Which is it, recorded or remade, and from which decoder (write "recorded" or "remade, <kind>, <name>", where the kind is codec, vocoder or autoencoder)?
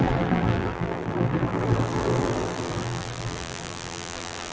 remade, vocoder, BigVGAN v2